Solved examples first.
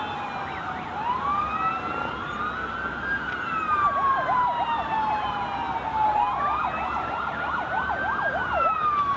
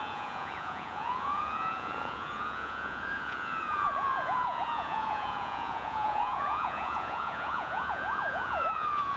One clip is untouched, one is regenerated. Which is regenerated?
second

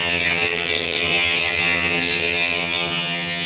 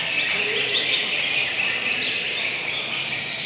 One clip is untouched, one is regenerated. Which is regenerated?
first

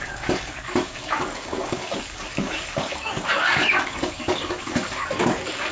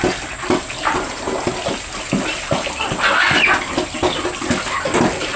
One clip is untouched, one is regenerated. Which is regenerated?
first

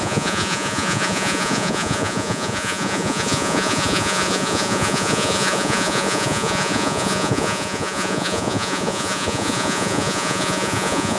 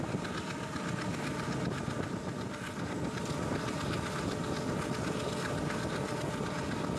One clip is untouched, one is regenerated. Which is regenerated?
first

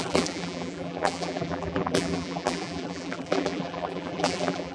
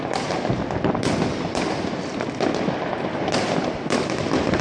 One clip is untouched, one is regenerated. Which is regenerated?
first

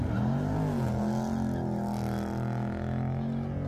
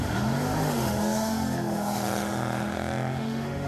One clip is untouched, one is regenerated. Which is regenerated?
second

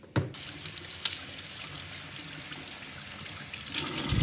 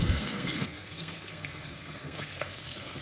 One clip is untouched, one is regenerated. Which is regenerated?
second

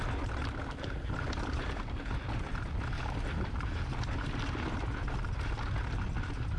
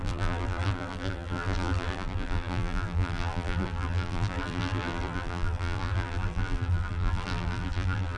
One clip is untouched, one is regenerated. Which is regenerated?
second